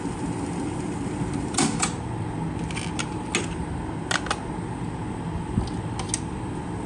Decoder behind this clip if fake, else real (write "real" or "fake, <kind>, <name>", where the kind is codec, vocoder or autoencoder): real